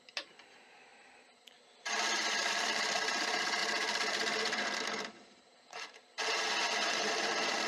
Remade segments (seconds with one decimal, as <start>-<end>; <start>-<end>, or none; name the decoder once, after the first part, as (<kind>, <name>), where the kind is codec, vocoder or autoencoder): 0.0-7.7 (vocoder, BigVGAN v2)